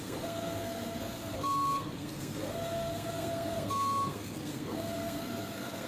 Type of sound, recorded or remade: remade